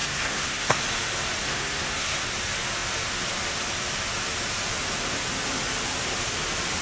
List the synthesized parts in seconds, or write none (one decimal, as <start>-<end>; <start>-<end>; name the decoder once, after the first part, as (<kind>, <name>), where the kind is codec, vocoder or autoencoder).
0.0-0.8 (codec, SNAC); 1.4-2.2